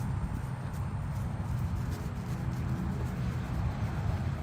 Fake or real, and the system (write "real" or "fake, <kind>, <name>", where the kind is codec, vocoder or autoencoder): real